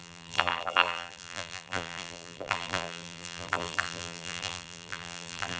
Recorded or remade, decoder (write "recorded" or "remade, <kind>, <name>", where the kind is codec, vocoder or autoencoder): remade, vocoder, BigVGAN v2